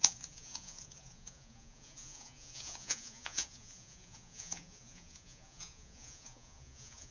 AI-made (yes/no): yes